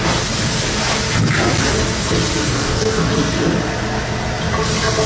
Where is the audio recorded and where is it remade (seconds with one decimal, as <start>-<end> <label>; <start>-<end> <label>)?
0.0-2.5 recorded; 2.5-3.1 remade; 3.1-5.1 recorded